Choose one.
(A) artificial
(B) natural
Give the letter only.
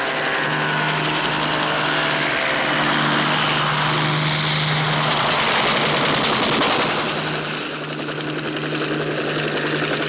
B